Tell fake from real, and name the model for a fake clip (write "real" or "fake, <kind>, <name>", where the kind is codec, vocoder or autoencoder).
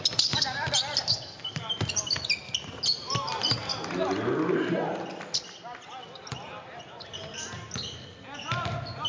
real